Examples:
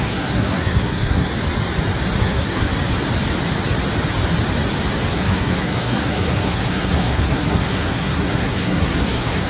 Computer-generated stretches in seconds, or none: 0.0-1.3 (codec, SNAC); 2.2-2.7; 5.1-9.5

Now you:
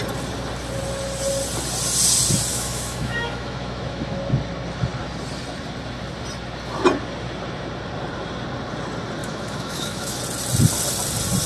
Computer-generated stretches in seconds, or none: 2.5-4.2 (autoencoder, DAC-VAE); 9.2-10.2

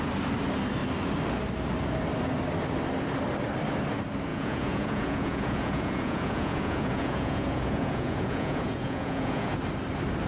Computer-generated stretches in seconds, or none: 4.3-9.6 (vocoder, Vocos)

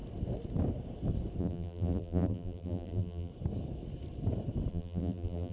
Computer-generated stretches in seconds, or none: 1.4-3.3 (vocoder, BigVGAN v2); 4.7-5.5

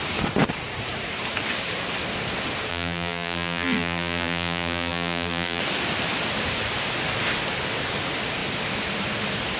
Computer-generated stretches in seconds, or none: 2.7-5.6 (vocoder, BigVGAN v2)

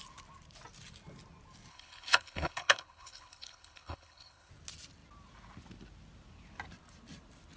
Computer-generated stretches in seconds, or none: 1.7-4.5 (codec, HILCodec)

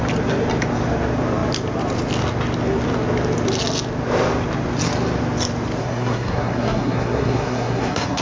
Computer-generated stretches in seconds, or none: 5.8-8.2 (codec, SNAC)